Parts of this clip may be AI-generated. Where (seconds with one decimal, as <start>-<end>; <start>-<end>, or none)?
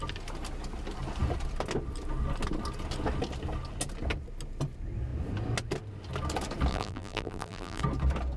6.7-7.8